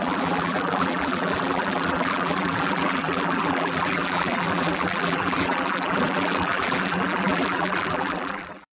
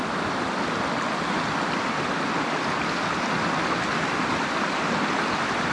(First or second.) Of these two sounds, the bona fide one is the second